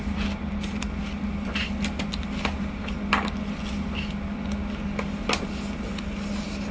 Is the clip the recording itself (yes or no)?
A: yes